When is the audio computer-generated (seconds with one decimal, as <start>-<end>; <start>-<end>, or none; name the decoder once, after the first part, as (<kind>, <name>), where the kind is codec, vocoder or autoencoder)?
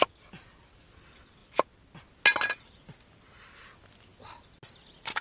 none